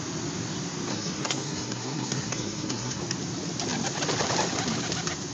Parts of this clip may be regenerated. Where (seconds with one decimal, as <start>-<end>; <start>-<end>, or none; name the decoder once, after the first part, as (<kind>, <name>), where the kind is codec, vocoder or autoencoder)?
0.9-3.0 (codec, SNAC)